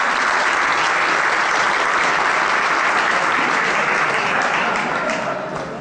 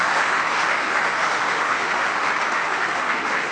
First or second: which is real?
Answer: first